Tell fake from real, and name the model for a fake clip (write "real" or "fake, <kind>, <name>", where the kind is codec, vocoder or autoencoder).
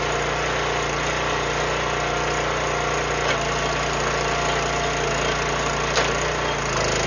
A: real